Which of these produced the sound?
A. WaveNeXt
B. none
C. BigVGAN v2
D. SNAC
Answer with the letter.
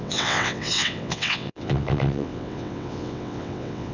A